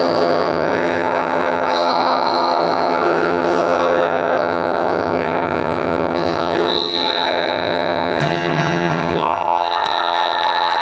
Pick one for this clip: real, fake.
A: fake